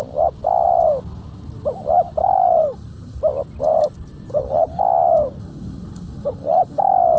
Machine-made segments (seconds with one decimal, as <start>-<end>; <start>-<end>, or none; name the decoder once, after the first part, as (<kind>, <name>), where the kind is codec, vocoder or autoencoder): 2.2-3.2 (codec, HILCodec); 4.3-4.8; 5.4-6.8

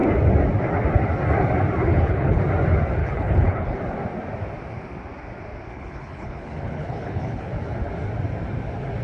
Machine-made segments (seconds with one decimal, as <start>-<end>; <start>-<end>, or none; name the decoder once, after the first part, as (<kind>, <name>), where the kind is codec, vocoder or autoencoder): 1.9-2.4 (codec, HILCodec); 3.0-3.8; 5.7-7.5

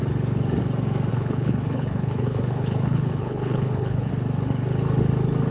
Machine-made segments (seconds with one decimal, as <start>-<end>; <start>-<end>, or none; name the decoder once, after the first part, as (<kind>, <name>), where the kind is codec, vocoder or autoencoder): 1.1-4.1 (codec, HILCodec)

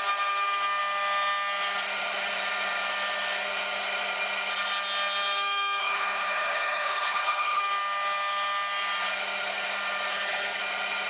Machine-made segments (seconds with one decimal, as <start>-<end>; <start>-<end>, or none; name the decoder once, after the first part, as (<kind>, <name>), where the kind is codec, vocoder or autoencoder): 5.8-7.6 (codec, HILCodec); 10.1-10.6

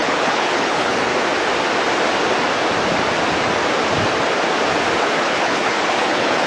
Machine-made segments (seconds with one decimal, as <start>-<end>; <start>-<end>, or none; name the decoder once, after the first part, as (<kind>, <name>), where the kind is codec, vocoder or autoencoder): 0.0-1.1 (codec, HILCodec); 5.0-6.5

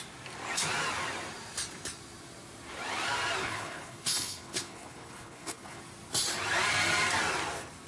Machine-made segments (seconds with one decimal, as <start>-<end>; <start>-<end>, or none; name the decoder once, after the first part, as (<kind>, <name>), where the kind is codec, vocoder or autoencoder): 3.4-5.8 (codec, HILCodec)